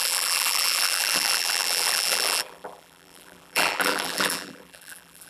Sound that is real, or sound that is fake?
fake